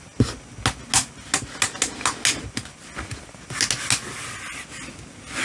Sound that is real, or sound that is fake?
real